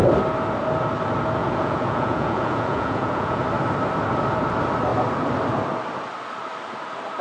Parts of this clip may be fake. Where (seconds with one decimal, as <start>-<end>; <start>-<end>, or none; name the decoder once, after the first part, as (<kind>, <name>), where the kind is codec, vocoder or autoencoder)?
1.4-3.4 (vocoder, Vocos)